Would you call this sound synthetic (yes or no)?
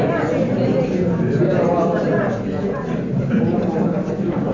no